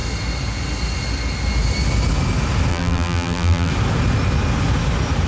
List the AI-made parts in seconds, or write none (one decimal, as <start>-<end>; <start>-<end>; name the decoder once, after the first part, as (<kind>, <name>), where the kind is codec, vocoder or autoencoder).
2.7-3.7 (vocoder, BigVGAN v2)